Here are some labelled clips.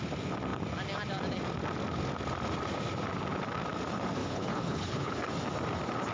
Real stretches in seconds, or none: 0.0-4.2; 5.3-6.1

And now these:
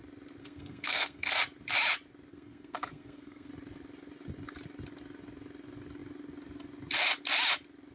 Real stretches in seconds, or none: 0.0-0.4; 1.3-2.3; 3.5-7.9

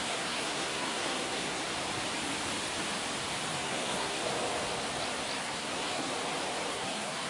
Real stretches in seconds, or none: 1.6-3.6; 4.2-5.4; 6.1-6.7

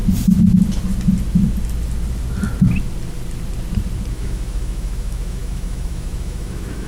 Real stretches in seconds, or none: 0.0-4.1